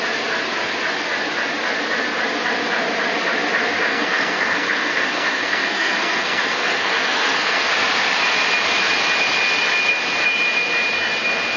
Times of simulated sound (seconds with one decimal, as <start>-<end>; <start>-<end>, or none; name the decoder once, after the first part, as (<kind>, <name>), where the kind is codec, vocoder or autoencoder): 3.9-7.7 (codec, SNAC)